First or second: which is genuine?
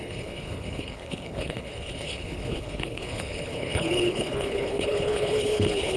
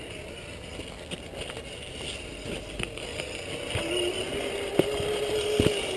second